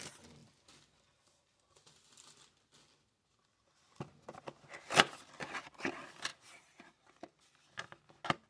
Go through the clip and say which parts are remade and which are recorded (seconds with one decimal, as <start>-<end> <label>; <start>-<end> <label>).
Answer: 0.0-6.3 recorded; 6.3-7.7 remade; 7.7-8.5 recorded